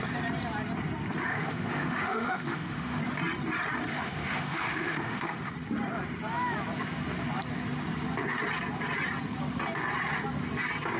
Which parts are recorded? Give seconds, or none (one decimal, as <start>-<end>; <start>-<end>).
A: 0.0-1.3; 3.0-3.9; 5.5-11.0